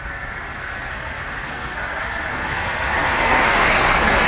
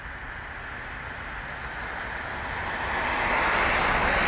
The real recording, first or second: second